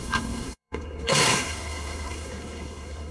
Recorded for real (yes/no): no